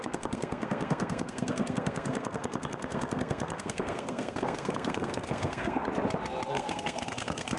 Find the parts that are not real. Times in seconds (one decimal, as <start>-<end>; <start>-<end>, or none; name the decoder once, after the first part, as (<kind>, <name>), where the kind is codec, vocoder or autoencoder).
0.0-5.8 (codec, SNAC); 6.5-7.6